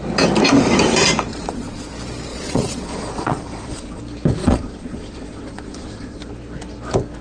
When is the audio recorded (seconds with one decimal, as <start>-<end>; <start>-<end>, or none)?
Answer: 0.0-1.3; 1.9-2.3; 4.0-4.4; 6.2-7.2